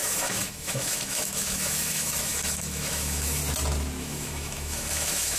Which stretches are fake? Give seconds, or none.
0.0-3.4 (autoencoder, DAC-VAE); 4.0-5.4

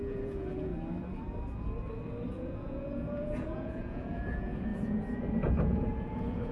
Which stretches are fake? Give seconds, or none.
0.0-0.7 (vocoder, Vocos); 2.3-6.5

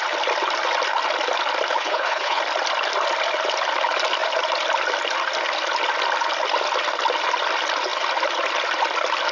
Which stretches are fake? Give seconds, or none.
1.8-2.4 (codec, HILCodec)